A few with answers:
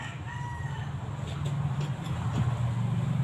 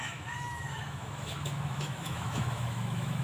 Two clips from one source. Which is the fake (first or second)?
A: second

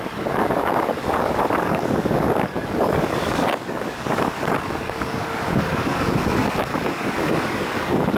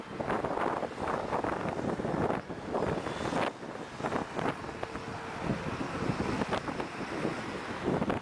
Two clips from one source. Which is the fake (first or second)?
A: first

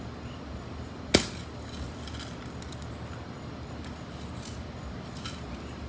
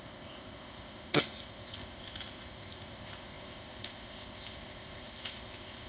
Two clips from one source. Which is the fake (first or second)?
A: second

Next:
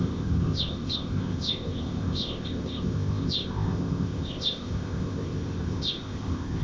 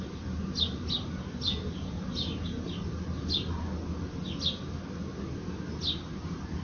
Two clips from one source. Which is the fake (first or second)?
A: first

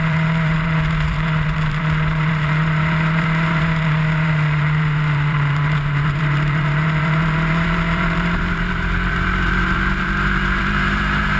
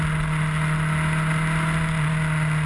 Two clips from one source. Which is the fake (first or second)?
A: first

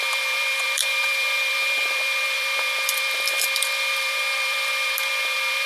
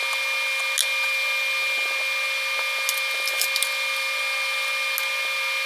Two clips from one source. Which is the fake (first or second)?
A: first